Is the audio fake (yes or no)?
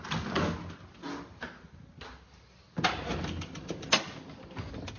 no